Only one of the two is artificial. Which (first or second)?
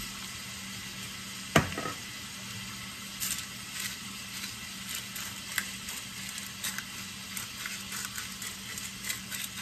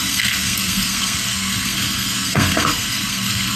second